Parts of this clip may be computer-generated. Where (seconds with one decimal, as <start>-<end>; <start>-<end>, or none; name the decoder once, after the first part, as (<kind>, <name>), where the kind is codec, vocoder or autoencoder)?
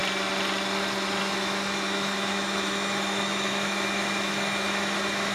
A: 1.2-5.3 (autoencoder, DAC-VAE)